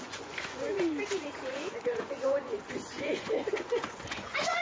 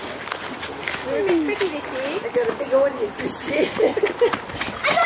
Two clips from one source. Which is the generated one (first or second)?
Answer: first